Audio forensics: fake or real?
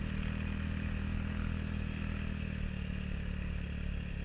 real